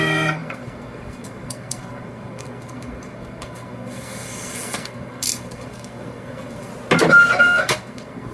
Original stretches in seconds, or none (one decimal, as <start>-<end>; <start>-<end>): 6.7-7.4